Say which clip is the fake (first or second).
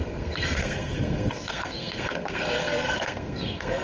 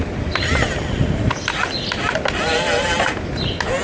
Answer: first